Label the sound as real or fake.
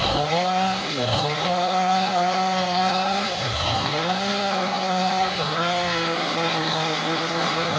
fake